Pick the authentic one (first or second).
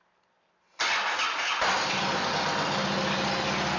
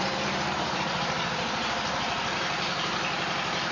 first